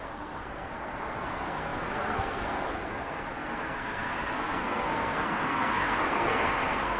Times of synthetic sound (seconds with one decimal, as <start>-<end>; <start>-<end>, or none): 0.0-7.0